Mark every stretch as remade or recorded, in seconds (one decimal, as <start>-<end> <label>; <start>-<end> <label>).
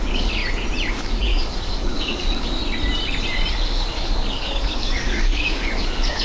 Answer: 0.0-0.4 remade; 0.4-0.9 recorded; 0.9-2.6 remade; 2.6-3.5 recorded; 3.5-6.2 remade